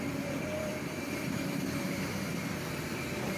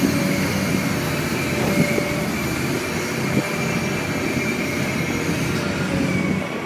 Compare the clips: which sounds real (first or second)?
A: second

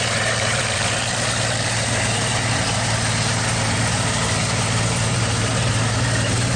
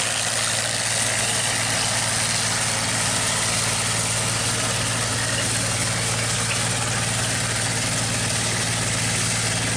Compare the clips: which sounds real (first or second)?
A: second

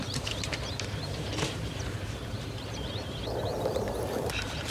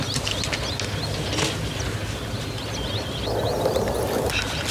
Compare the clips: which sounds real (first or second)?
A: second